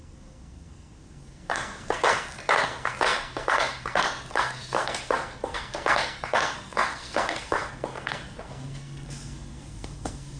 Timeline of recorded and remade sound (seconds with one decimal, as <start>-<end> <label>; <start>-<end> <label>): 0.0-10.4 remade